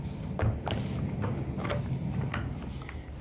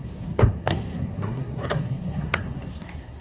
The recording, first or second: first